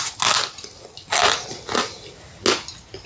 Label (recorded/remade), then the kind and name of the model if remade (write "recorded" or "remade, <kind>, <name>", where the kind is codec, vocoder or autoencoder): recorded